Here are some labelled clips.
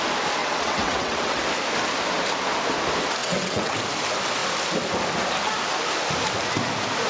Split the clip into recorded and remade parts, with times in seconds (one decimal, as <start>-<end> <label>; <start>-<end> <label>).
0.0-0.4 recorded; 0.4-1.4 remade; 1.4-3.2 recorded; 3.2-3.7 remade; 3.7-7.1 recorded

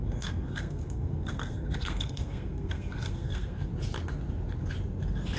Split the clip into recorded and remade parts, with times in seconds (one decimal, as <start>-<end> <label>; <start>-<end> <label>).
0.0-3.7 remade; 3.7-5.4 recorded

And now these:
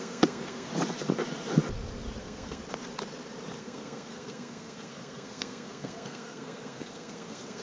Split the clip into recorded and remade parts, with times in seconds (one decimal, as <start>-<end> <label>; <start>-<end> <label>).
0.0-0.7 remade; 0.7-2.2 recorded; 2.2-2.6 remade; 2.6-3.6 recorded; 3.6-7.6 remade

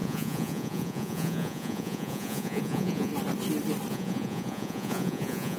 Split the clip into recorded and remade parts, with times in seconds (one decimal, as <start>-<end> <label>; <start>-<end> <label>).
0.0-3.1 remade; 3.1-3.9 recorded; 3.9-5.6 remade

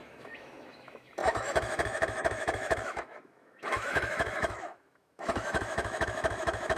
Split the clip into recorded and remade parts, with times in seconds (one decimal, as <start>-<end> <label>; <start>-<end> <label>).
0.0-6.8 remade

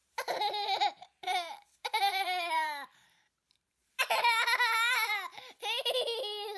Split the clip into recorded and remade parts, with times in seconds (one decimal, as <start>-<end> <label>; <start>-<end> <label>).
0.0-4.0 remade; 4.0-6.6 recorded

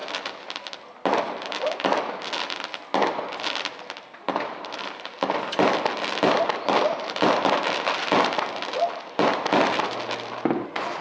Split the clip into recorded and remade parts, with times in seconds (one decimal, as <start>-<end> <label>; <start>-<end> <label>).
0.0-11.0 recorded